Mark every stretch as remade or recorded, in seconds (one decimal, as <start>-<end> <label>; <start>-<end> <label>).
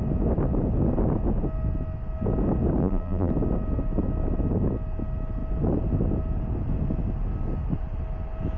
0.0-2.8 recorded; 2.8-3.3 remade; 3.3-8.6 recorded